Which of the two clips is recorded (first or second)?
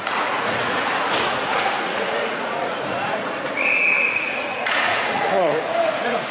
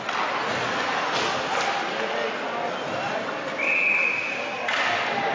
second